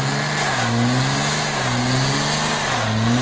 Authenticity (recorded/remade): recorded